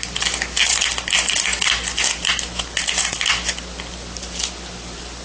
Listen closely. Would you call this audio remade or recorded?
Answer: recorded